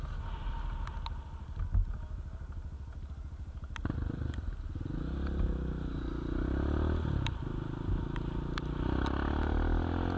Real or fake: real